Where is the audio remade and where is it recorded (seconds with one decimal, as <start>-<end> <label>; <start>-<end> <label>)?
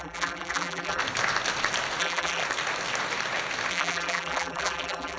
0.0-1.0 remade; 1.0-2.0 recorded; 2.0-2.4 remade; 2.4-3.7 recorded; 3.7-5.2 remade